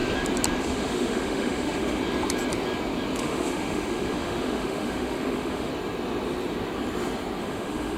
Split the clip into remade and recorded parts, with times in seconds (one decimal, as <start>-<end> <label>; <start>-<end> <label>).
0.0-0.6 recorded; 0.6-2.0 remade; 2.0-3.2 recorded; 3.2-5.7 remade; 5.7-7.4 recorded; 7.4-8.0 remade